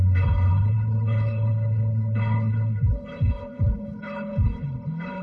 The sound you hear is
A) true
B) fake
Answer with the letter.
B